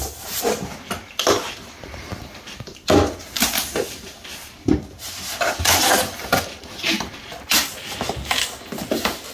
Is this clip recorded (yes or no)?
yes